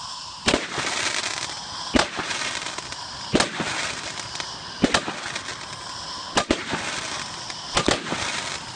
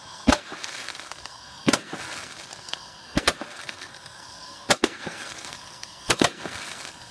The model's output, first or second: second